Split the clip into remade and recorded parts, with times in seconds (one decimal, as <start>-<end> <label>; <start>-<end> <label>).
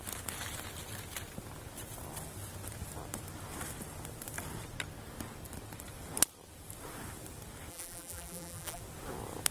0.0-7.7 recorded; 7.7-8.8 remade; 8.8-9.5 recorded